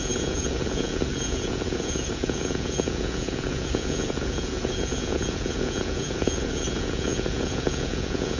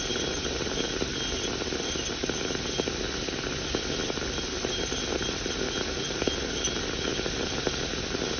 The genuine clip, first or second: second